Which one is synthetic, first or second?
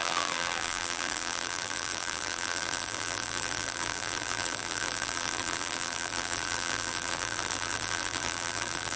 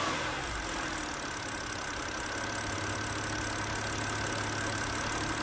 first